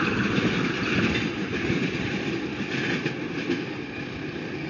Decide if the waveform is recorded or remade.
recorded